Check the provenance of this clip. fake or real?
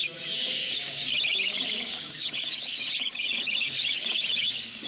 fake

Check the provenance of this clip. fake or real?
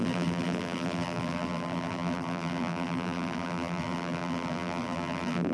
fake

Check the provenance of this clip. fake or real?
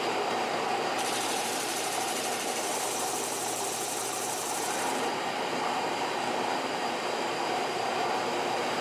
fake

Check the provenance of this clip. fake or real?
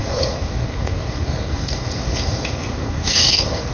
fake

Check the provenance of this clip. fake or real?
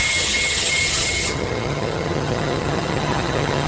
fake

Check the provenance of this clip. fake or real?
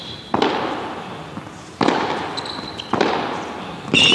real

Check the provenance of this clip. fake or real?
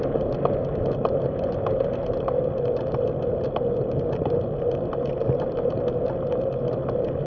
real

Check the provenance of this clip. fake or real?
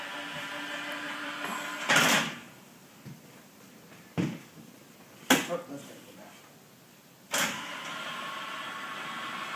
real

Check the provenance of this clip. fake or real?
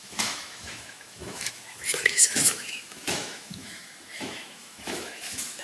fake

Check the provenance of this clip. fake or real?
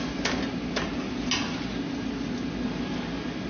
real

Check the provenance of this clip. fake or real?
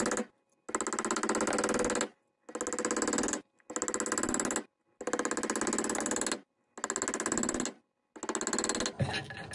real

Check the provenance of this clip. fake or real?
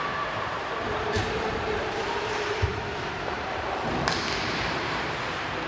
fake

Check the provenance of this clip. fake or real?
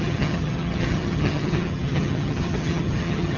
fake